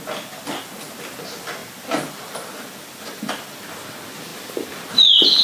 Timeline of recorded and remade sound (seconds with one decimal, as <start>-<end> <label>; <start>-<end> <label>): 0.0-5.4 recorded